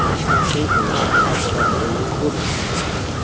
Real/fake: fake